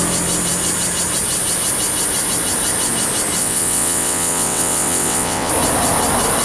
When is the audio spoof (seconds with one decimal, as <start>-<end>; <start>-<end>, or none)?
3.4-5.5